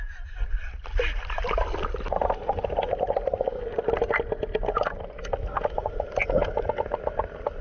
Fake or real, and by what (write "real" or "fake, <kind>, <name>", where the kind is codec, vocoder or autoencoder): real